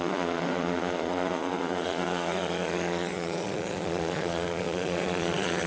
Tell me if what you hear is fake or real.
fake